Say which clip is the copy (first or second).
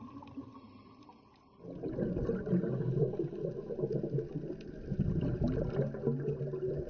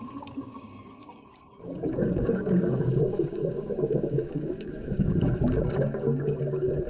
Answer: second